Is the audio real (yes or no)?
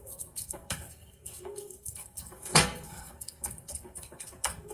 no